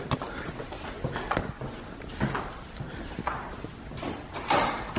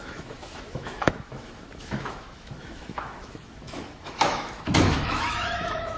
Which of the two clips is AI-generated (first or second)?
second